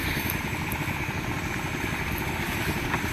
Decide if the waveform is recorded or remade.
recorded